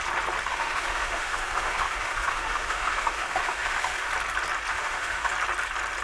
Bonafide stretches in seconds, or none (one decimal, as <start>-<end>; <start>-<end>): 0.0-0.5; 4.1-4.7; 5.3-6.0